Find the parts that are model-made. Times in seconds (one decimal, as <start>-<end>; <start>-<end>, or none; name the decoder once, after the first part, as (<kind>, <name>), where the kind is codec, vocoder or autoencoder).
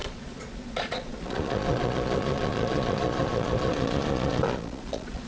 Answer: 0.0-5.3 (vocoder, Vocos)